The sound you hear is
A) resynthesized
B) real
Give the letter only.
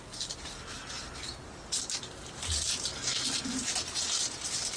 B